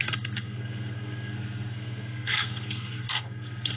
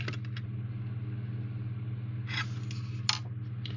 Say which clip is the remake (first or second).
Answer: first